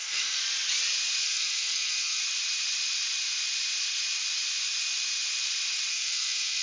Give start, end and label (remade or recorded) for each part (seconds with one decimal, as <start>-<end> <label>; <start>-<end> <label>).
0.0-0.4 remade; 0.4-1.2 recorded; 1.2-2.2 remade; 2.2-5.9 recorded; 5.9-6.6 remade